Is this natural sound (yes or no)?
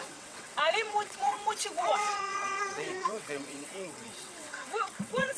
no